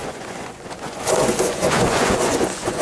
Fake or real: fake